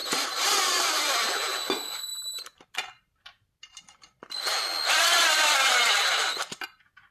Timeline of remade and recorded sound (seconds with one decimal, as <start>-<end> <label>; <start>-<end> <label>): 0.0-0.6 remade; 0.6-2.1 recorded; 2.1-4.2 remade; 4.2-7.1 recorded